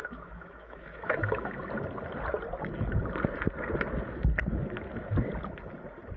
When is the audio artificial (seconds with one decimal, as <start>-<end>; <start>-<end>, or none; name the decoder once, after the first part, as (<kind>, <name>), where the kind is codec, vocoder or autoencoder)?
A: 0.0-1.6 (autoencoder, DAC-VAE)